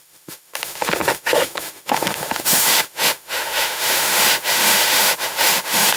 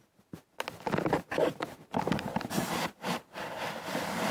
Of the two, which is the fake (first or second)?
first